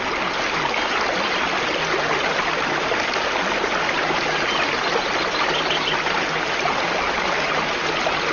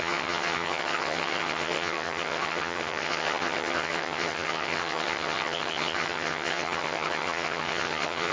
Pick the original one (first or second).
first